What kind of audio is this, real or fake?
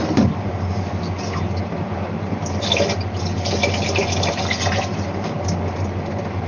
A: real